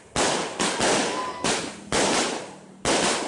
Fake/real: real